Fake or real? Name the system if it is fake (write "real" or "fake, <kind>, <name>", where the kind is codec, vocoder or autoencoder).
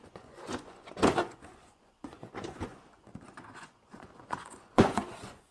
fake, vocoder, Vocos